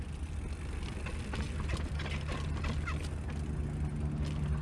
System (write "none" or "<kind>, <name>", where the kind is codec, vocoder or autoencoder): none